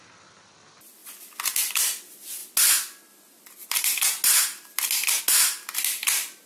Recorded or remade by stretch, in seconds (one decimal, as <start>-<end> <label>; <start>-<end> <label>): 0.0-6.5 recorded